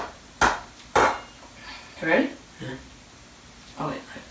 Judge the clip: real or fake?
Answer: real